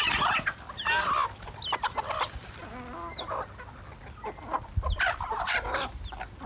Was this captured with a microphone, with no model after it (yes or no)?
yes